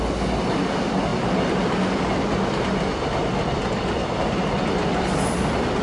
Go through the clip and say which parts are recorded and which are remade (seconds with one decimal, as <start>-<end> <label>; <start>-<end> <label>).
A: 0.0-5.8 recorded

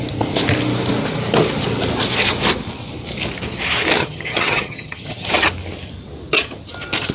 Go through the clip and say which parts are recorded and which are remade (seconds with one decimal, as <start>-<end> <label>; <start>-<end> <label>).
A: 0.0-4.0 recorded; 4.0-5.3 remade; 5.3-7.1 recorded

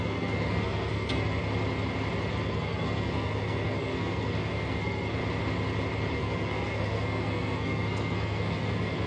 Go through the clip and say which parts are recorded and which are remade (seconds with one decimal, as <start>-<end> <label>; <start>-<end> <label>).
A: 0.0-1.4 remade; 1.4-2.3 recorded; 2.3-5.2 remade; 5.2-6.1 recorded; 6.1-9.1 remade

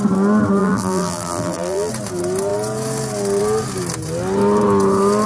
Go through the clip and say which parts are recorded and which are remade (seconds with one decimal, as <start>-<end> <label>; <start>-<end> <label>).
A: 0.0-0.6 recorded; 0.6-1.9 remade; 1.9-5.3 recorded

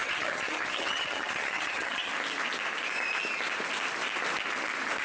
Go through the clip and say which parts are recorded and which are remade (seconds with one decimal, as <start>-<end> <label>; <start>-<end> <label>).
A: 0.0-2.1 remade; 2.1-5.0 recorded

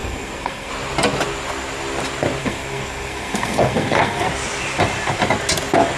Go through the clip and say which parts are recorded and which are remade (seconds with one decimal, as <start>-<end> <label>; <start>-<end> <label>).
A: 0.0-0.7 remade; 0.7-2.4 recorded; 2.4-4.3 remade; 4.3-6.0 recorded

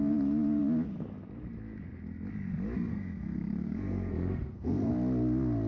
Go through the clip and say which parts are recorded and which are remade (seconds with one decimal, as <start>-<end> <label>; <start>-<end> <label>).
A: 0.0-2.9 recorded; 2.9-4.9 remade; 4.9-5.7 recorded

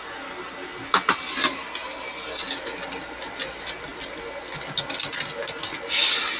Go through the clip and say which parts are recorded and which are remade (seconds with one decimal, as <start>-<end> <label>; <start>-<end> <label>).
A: 0.0-6.4 recorded